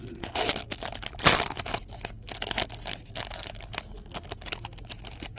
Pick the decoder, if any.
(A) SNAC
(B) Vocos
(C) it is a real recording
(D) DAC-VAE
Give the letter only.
C